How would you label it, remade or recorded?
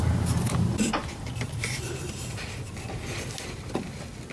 remade